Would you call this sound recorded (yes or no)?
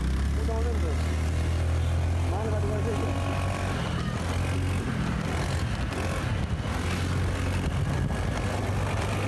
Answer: yes